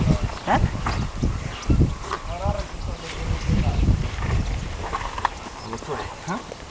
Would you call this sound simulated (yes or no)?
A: no